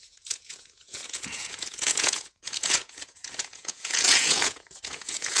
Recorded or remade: remade